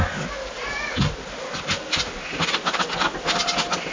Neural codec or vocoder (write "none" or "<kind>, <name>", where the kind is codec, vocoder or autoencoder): none